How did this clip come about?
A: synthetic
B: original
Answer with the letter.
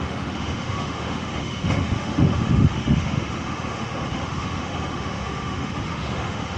A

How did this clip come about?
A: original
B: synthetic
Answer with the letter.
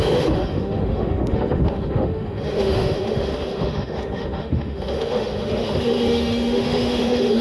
B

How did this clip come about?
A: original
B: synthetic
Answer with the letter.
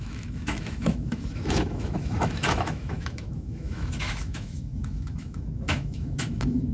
B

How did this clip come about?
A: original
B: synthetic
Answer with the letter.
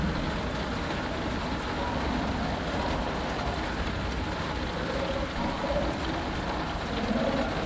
A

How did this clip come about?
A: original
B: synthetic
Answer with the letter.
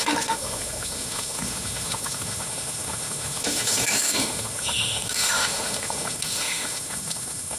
B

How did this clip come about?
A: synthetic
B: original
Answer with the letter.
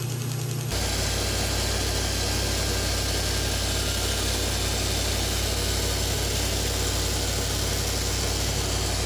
B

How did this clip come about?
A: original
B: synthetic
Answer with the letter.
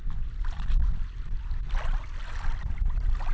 A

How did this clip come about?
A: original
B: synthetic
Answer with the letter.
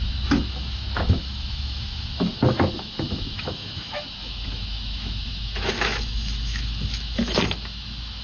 B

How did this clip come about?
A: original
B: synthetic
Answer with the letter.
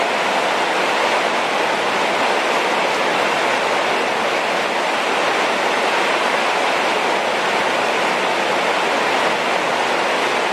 A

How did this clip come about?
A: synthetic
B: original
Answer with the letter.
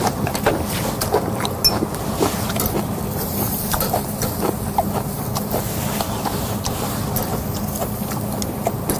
B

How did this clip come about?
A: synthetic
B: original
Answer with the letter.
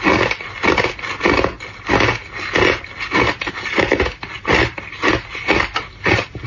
B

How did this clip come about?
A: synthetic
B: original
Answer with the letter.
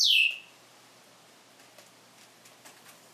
B